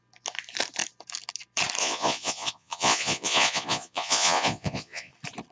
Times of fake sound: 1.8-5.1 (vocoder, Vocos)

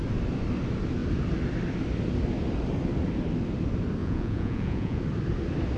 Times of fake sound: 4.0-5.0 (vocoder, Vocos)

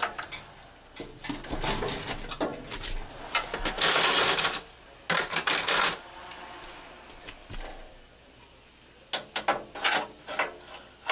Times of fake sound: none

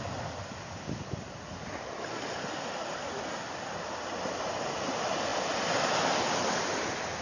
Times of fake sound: none

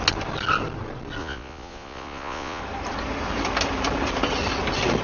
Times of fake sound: 1.2-2.6 (vocoder, Vocos)

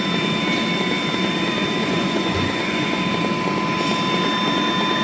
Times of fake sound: 1.8-3.0 (vocoder, Vocos)